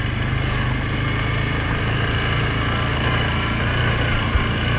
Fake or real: real